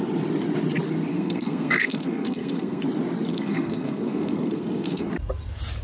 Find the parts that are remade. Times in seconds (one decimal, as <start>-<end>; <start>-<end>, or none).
1.1-2.8; 3.3-5.1